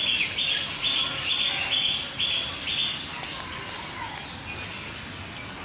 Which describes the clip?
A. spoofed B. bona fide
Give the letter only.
B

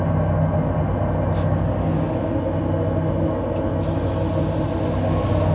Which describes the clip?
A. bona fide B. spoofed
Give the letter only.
A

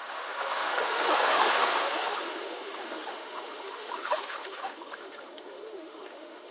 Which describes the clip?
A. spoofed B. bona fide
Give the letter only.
A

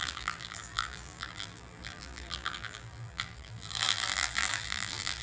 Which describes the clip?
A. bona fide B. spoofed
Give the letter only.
B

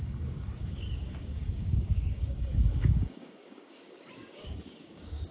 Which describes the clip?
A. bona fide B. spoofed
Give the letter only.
B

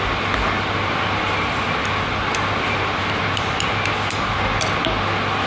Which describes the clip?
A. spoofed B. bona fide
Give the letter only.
B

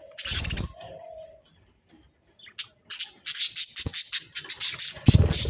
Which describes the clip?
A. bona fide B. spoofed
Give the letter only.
A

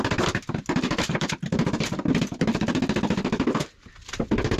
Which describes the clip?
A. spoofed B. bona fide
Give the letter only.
A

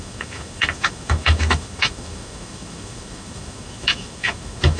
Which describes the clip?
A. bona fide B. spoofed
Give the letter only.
B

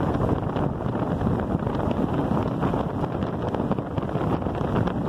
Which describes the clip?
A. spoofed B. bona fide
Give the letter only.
B